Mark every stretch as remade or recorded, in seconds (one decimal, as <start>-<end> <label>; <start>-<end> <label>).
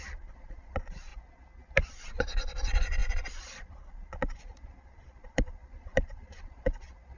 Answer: 0.0-1.1 remade; 1.1-1.8 recorded; 1.8-7.2 remade